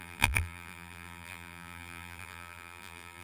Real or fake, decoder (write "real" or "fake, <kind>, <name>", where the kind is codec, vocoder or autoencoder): fake, vocoder, BigVGAN v2